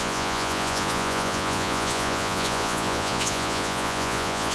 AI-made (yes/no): yes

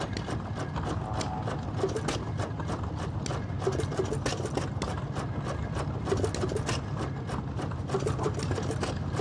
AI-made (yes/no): no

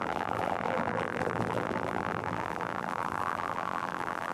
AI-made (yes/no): yes